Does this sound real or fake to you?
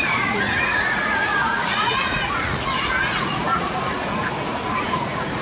fake